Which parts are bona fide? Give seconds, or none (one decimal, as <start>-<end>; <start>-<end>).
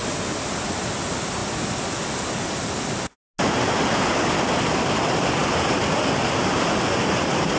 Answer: 0.0-7.6